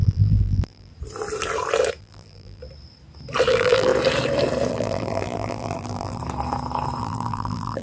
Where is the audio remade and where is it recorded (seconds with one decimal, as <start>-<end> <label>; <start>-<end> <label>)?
0.0-0.9 remade; 0.9-2.0 recorded; 2.0-2.6 remade; 2.6-3.5 recorded; 3.5-3.9 remade; 3.9-4.7 recorded; 4.7-6.2 remade; 6.2-7.0 recorded; 7.0-7.8 remade